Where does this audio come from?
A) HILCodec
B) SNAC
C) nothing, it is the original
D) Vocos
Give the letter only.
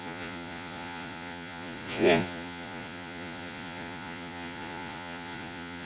D